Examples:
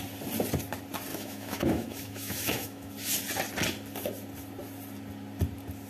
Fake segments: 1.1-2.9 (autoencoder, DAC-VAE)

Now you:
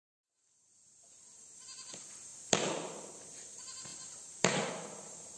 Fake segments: none

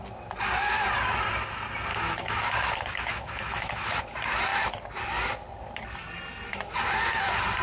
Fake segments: 1.9-4.0 (autoencoder, DAC-VAE)

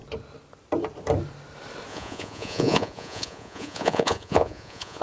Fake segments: 1.9-5.0 (vocoder, Vocos)

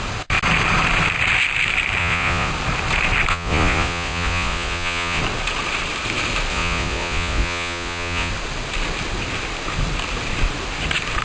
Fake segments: 2.0-2.5 (vocoder, Vocos); 3.3-5.2; 6.5-8.3

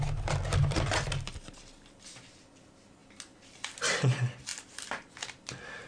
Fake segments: none

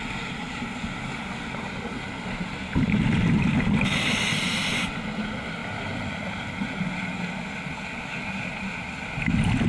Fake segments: none

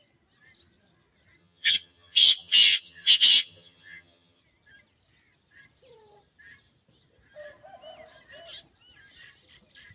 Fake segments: 1.4-4.4 (vocoder, HiFi-GAN)